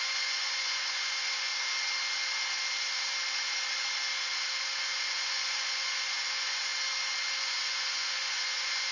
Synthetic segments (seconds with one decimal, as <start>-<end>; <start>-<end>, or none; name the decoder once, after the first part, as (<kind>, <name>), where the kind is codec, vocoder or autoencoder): 0.0-1.5 (vocoder, Vocos); 4.6-6.7; 7.4-8.9